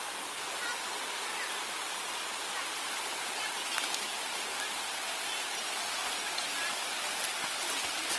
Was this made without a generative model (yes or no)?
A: yes